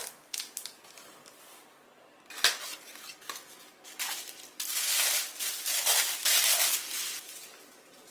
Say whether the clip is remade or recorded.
recorded